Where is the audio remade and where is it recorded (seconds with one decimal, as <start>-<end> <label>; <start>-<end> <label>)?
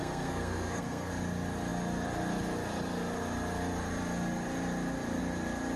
0.0-1.1 remade; 1.1-5.8 recorded